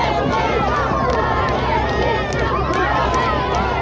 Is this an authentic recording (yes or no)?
yes